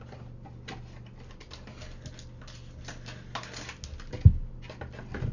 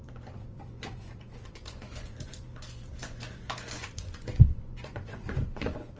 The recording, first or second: first